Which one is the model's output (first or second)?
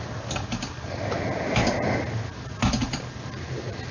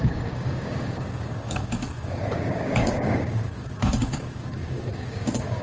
second